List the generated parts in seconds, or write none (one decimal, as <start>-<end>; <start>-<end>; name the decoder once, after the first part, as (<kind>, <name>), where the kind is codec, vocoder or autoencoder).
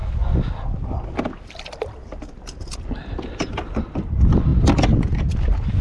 none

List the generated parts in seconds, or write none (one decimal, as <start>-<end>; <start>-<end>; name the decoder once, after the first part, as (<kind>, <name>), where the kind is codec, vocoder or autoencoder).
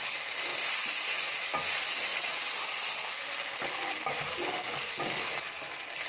none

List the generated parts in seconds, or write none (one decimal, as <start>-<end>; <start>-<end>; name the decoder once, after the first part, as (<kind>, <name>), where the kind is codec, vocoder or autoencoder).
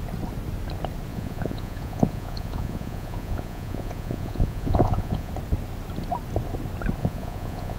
1.1-5.3 (vocoder, Vocos); 7.0-7.8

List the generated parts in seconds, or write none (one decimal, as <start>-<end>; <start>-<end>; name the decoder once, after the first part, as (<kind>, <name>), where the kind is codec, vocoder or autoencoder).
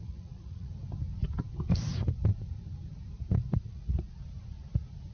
0.0-0.7 (vocoder, Vocos); 3.6-4.2